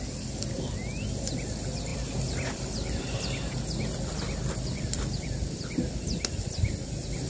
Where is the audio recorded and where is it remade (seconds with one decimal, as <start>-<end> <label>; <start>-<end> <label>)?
0.0-7.3 recorded